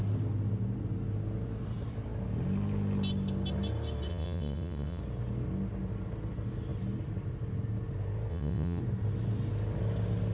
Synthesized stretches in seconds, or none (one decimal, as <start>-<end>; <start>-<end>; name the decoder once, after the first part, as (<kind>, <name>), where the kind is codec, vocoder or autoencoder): 4.1-5.0 (vocoder, WaveNeXt); 8.3-8.8

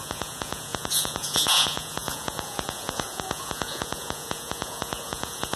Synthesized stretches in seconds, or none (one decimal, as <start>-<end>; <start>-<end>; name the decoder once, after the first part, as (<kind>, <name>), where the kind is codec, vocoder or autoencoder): 0.0-5.6 (vocoder, Vocos)

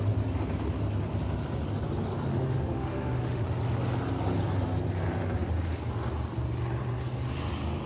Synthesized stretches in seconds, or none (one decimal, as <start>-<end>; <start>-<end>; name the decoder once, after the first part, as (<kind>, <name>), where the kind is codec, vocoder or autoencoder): 2.3-3.4 (autoencoder, DAC-VAE)